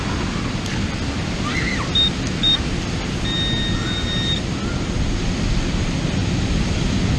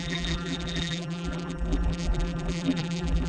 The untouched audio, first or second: first